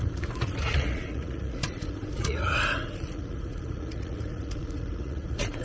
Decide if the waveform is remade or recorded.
remade